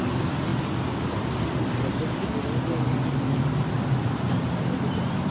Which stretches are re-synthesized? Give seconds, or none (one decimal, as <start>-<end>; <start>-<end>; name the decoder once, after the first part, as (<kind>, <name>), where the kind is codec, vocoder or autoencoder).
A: 0.0-0.5 (vocoder, BigVGAN v2); 3.7-5.3